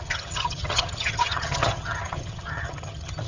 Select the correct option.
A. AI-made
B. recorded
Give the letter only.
A